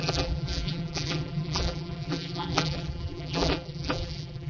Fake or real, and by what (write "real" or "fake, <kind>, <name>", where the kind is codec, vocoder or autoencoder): fake, vocoder, BigVGAN v2